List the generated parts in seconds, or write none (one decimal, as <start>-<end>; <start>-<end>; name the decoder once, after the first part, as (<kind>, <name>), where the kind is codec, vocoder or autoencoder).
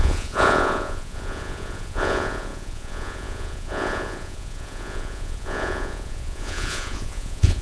0.0-7.6 (vocoder, Vocos)